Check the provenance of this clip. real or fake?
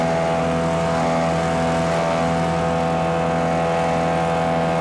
real